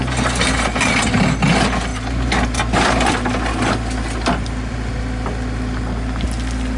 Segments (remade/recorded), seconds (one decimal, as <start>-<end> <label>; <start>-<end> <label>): 0.0-6.8 recorded